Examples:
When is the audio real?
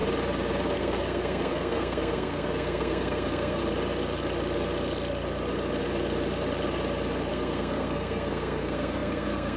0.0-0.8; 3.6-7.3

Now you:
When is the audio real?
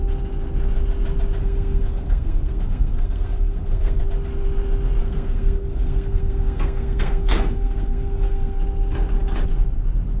0.0-1.4; 4.0-5.0; 8.6-10.2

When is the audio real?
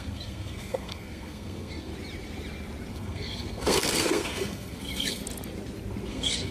1.9-2.9; 5.2-6.1